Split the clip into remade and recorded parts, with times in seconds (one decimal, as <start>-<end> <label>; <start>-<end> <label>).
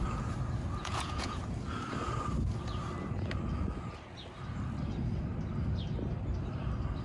0.0-0.8 recorded; 0.8-1.4 remade; 1.4-7.0 recorded